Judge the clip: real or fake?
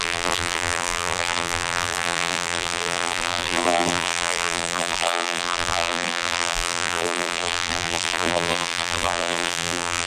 fake